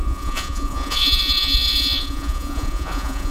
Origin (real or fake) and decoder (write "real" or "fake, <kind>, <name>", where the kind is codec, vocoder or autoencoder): fake, vocoder, Vocos